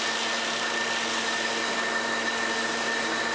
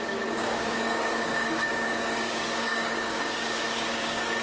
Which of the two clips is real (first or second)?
first